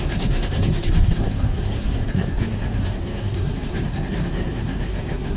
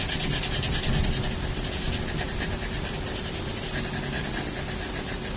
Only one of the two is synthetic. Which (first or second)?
first